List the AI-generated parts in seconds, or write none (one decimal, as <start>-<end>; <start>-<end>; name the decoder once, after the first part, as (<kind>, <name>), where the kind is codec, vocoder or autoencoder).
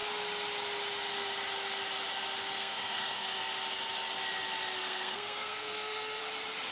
2.6-3.4 (codec, SNAC); 4.8-6.2